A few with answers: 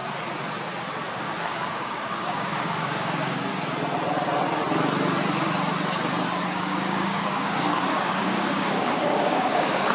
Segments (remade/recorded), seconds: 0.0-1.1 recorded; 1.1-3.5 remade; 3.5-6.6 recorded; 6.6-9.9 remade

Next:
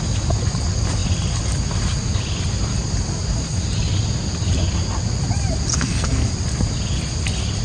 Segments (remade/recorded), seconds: 0.0-5.7 recorded; 5.7-6.3 remade; 6.3-7.6 recorded

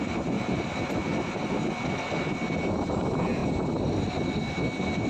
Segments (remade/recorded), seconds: 0.0-5.1 recorded

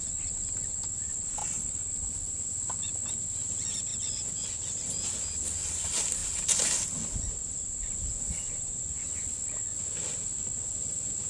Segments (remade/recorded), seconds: 0.0-11.3 recorded

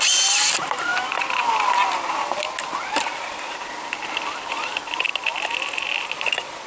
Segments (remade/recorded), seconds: 0.0-6.7 recorded

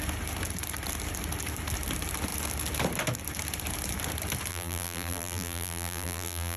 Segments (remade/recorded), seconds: 0.0-4.5 recorded; 4.5-6.6 remade

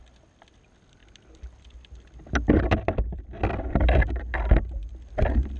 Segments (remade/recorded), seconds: 0.0-5.6 recorded

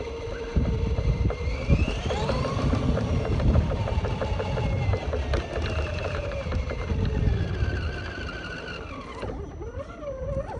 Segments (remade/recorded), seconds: 0.0-0.5 recorded; 0.5-4.2 remade; 4.2-5.9 recorded; 5.9-6.8 remade; 6.8-10.6 recorded